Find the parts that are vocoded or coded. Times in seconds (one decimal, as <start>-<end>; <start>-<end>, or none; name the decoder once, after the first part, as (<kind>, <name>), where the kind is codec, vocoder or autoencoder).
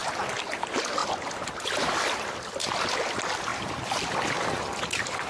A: 0.0-0.5 (vocoder, BigVGAN v2); 1.0-2.4; 3.5-4.6